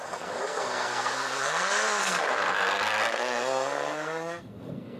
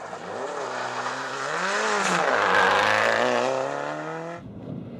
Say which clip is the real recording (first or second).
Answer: second